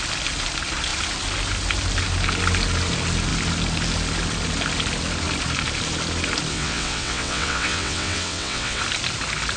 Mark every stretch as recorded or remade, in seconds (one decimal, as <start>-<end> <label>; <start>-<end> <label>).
0.0-6.5 recorded; 6.5-8.8 remade; 8.8-9.6 recorded